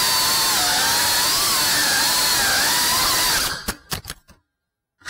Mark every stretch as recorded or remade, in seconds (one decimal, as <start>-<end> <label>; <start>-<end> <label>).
0.0-1.8 recorded; 1.8-2.4 remade; 2.4-5.1 recorded